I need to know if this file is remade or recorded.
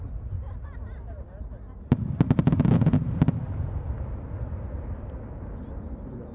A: recorded